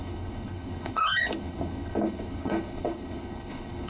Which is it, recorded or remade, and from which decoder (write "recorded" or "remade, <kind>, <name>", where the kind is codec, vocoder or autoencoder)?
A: remade, codec, HILCodec